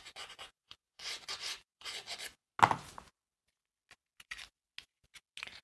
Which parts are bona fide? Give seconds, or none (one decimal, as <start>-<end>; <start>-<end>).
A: 2.4-5.6